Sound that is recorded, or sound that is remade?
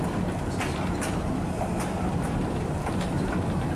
recorded